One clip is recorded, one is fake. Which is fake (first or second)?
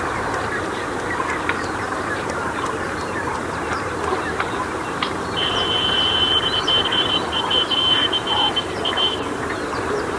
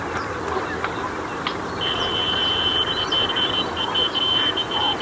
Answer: first